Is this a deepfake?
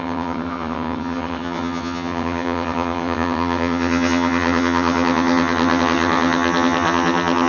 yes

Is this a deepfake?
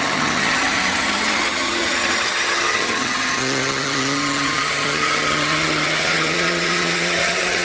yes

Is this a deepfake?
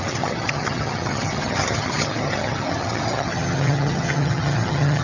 yes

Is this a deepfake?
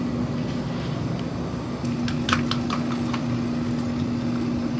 no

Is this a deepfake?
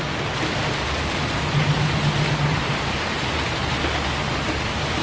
no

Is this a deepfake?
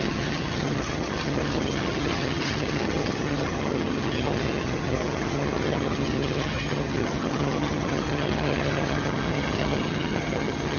yes